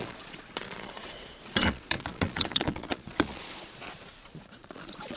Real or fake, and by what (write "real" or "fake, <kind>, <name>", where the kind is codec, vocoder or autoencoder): fake, vocoder, Vocos